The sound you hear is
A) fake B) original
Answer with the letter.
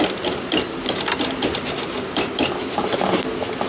B